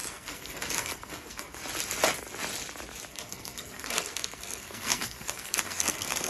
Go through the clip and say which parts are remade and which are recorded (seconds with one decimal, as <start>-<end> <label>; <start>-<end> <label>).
0.0-1.6 remade; 1.6-3.1 recorded; 3.1-6.3 remade